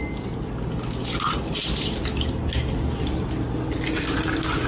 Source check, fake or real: real